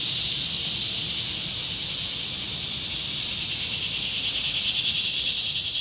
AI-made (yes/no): no